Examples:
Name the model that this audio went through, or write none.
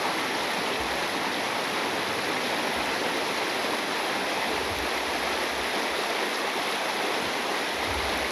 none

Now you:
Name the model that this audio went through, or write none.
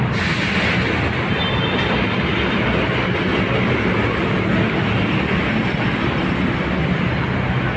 none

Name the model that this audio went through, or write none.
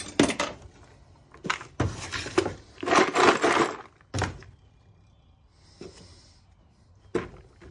none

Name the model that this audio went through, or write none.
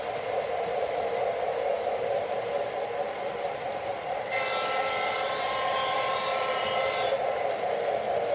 none